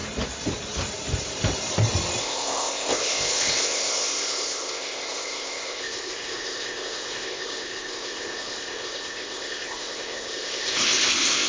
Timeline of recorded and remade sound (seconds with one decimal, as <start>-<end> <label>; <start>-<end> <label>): 0.0-2.2 recorded; 2.2-11.5 remade